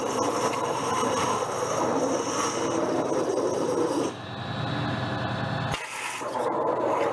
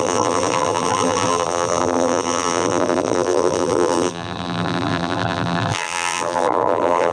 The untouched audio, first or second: first